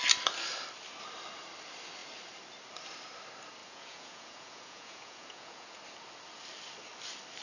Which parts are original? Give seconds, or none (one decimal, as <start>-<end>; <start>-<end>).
0.0-3.6; 5.8-7.4